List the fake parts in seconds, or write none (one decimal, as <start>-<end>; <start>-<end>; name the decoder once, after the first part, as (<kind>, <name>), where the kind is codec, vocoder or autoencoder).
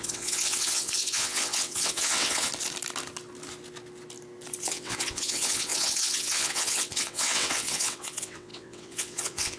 0.0-2.5 (vocoder, WaveNeXt); 4.6-9.6